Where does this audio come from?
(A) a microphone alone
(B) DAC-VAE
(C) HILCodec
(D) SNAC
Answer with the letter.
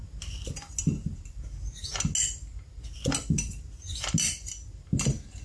A